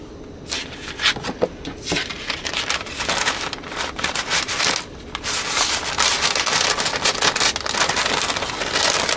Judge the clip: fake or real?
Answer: real